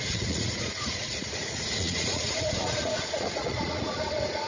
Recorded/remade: remade